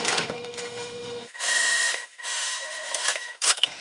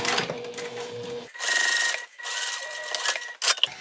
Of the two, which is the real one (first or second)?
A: second